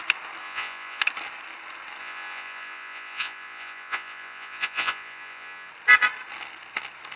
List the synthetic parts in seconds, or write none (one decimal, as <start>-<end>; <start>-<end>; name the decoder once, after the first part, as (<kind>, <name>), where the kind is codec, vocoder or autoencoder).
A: 0.4-1.0 (vocoder, Vocos); 2.0-5.7